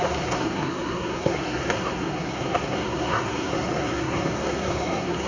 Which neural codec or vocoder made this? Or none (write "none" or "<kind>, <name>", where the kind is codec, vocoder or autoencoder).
codec, SNAC